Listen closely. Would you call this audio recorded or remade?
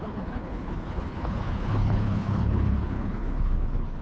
remade